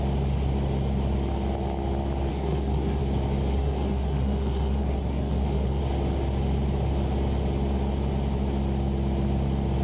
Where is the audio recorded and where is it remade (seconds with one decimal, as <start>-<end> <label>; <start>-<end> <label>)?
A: 0.0-2.3 recorded; 2.3-3.0 remade; 3.0-3.5 recorded; 3.5-5.8 remade; 5.8-9.8 recorded

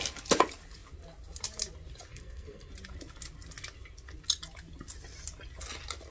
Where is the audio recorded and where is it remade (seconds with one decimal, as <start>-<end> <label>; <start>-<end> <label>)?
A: 0.0-2.1 recorded; 2.1-2.7 remade; 2.7-6.1 recorded

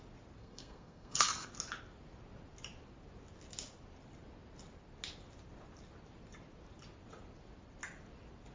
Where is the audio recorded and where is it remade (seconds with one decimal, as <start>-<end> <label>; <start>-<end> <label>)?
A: 0.0-0.4 recorded; 0.4-1.5 remade; 1.5-8.5 recorded

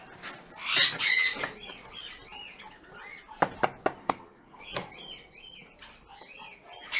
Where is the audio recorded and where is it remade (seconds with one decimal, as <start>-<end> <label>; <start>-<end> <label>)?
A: 0.0-4.0 recorded; 4.0-4.6 remade; 4.6-7.0 recorded

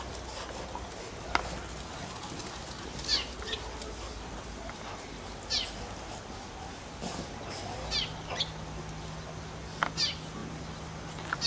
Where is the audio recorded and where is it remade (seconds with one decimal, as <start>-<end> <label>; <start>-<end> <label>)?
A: 0.0-11.5 recorded